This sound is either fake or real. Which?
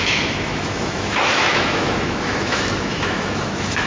fake